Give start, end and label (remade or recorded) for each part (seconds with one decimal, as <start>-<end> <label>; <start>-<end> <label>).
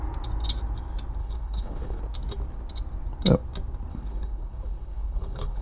0.0-1.2 recorded; 1.2-2.0 remade; 2.0-3.9 recorded; 3.9-5.6 remade